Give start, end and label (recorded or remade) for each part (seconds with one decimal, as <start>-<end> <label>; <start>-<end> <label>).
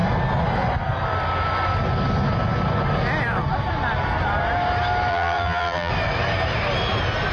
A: 0.0-5.1 recorded; 5.1-5.9 remade; 5.9-7.3 recorded